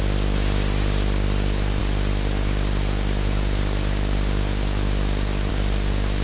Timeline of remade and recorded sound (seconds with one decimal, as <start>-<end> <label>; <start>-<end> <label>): 0.0-6.2 recorded